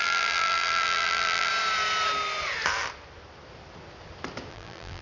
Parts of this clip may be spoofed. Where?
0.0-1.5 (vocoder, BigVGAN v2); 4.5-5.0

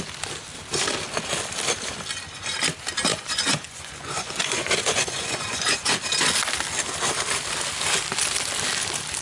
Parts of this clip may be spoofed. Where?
3.1-6.0 (vocoder, Vocos)

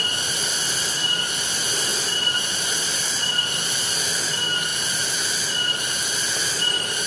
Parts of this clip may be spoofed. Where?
none

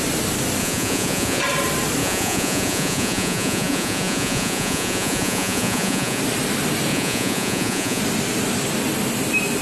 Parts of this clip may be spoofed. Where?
0.6-1.4 (vocoder, Vocos); 2.0-6.2; 6.9-8.0

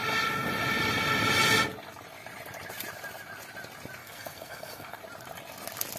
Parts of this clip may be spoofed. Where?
4.0-5.0 (codec, SNAC)